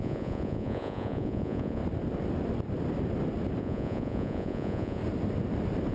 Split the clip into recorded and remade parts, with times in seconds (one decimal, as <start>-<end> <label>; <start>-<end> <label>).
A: 0.0-1.8 remade; 1.8-3.6 recorded; 3.6-5.0 remade; 5.0-5.9 recorded